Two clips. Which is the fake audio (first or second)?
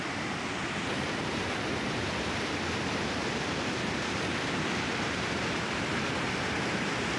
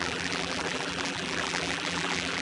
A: second